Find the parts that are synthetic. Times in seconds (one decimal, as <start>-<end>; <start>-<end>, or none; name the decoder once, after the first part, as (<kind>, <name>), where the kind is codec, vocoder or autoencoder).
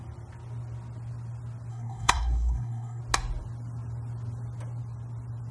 1.7-3.0 (codec, SNAC)